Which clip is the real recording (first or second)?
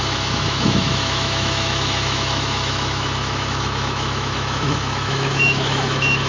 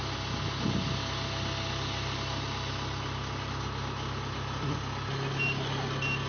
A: second